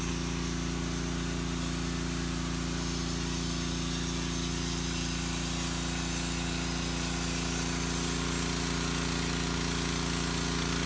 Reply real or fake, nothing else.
real